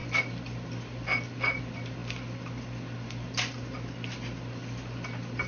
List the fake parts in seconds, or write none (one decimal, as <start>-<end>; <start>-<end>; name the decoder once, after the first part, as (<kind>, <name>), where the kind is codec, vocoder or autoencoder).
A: 0.0-5.5 (vocoder, BigVGAN v2)